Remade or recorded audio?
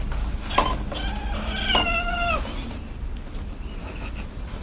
recorded